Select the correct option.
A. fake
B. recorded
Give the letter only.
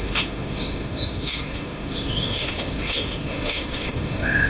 A